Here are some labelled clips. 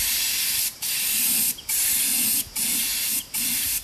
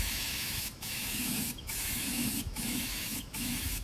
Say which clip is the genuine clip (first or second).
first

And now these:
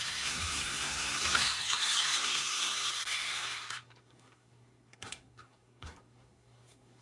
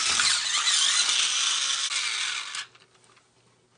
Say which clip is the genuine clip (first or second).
second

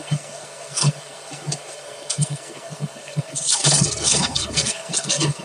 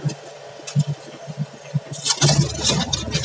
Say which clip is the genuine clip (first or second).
second